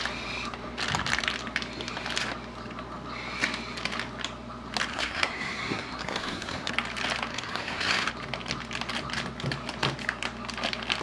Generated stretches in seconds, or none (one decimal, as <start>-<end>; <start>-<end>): 4.9-6.7; 7.3-8.1

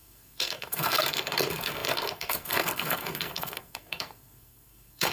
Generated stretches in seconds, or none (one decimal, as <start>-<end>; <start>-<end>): 0.0-5.1

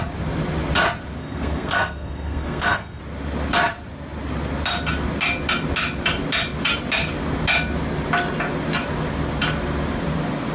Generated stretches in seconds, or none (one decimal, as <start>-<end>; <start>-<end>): 1.2-3.0